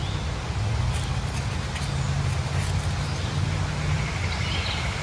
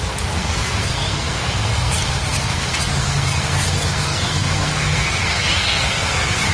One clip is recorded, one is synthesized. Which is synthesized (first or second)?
second